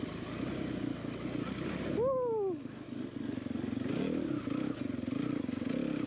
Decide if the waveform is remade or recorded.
recorded